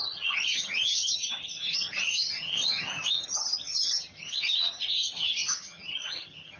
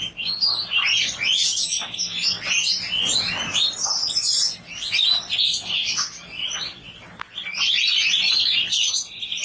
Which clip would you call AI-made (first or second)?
first